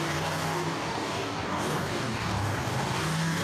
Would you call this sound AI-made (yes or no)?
yes